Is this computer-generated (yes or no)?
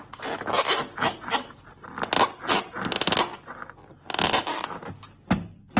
no